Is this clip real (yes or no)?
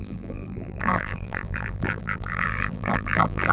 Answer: no